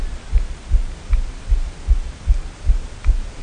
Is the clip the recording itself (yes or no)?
yes